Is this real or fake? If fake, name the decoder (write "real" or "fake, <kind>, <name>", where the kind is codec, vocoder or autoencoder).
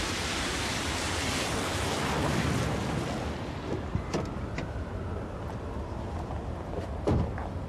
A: real